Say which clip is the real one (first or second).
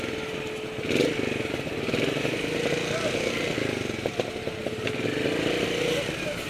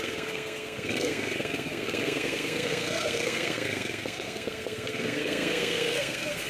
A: first